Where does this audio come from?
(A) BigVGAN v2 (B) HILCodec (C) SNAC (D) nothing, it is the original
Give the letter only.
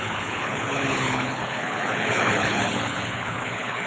B